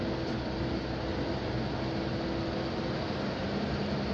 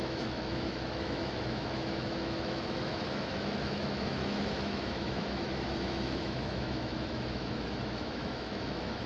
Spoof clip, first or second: second